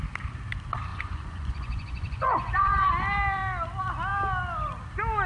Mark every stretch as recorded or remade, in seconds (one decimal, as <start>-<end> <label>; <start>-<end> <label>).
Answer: 0.0-0.9 recorded; 0.9-2.9 remade; 2.9-5.3 recorded